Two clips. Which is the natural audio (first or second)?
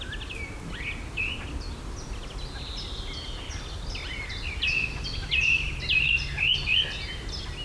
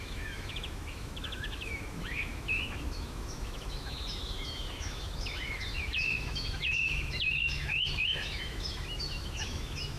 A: first